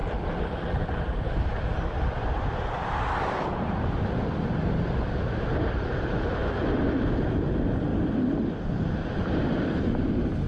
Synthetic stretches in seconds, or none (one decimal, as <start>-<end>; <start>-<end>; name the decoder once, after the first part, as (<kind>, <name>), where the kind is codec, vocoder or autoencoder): 0.0-4.4 (vocoder, BigVGAN v2); 6.4-7.2; 7.9-9.8

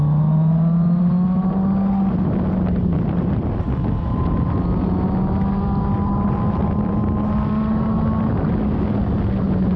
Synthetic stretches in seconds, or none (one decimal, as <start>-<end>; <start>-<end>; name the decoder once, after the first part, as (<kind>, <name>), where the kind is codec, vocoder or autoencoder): none

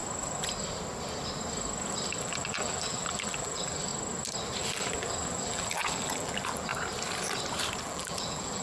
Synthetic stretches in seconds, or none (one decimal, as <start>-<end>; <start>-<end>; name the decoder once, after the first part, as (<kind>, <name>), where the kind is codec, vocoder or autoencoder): 2.2-3.9 (vocoder, BigVGAN v2); 4.6-6.7; 7.8-8.6

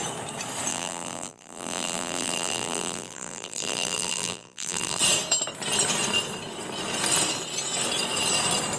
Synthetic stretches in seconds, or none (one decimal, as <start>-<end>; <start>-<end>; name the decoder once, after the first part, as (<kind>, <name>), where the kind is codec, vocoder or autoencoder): 0.7-5.0 (vocoder, BigVGAN v2)

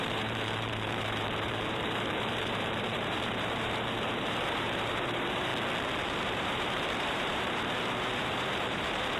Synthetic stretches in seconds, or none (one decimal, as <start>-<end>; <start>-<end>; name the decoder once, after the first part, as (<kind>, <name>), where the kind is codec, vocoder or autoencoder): 0.0-5.5 (vocoder, BigVGAN v2); 6.0-9.2

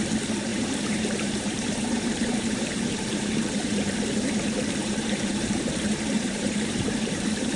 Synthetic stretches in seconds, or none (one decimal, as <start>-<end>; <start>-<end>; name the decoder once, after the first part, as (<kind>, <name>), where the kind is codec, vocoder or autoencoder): 0.5-4.0 (vocoder, BigVGAN v2); 4.8-7.6

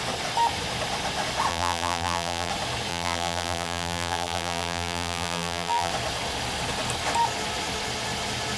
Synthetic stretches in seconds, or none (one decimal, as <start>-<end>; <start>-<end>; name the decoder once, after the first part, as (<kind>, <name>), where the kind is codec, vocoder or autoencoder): 1.5-2.5 (vocoder, BigVGAN v2); 2.9-5.9

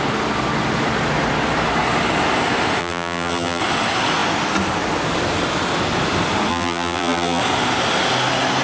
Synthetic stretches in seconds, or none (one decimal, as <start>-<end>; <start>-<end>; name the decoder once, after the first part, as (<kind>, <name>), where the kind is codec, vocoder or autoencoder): 2.8-3.6 (vocoder, BigVGAN v2); 6.5-7.4